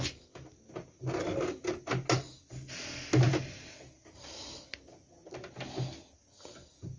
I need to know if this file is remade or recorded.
recorded